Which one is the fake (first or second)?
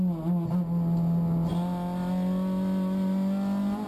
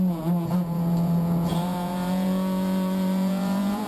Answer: second